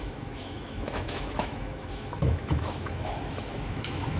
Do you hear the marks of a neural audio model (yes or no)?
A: yes